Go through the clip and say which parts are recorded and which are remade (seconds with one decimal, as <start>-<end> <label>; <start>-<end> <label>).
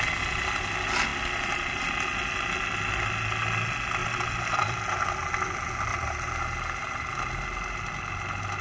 0.0-1.1 recorded; 1.1-1.8 remade; 1.8-4.0 recorded; 4.0-5.0 remade; 5.0-5.9 recorded; 5.9-7.9 remade; 7.9-8.6 recorded